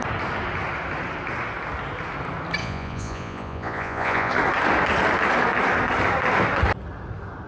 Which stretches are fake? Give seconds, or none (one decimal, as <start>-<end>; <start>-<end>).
2.6-4.3